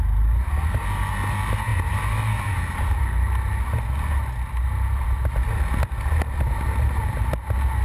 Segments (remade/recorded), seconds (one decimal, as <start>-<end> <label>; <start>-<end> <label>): 0.0-7.8 recorded